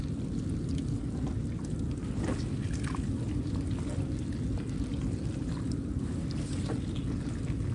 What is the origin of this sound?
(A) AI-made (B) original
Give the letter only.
B